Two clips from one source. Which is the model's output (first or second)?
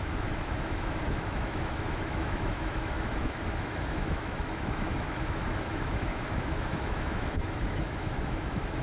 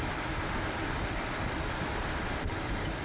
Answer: first